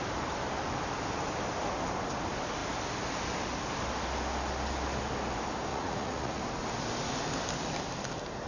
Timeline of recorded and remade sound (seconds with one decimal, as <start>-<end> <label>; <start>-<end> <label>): 0.0-5.7 recorded; 5.7-6.4 remade; 6.4-8.5 recorded